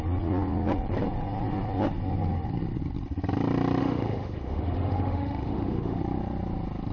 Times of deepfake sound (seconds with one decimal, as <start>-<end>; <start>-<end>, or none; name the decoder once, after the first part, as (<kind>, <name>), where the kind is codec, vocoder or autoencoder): 3.8-6.0 (autoencoder, DAC-VAE)